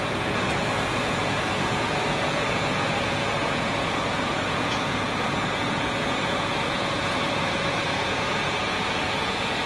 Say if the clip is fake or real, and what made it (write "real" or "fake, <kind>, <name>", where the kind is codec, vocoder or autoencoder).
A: fake, vocoder, Vocos